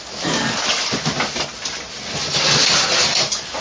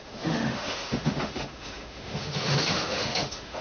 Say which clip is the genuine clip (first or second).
first